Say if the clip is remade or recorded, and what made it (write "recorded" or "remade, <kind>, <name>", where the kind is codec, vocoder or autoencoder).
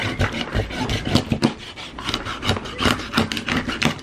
recorded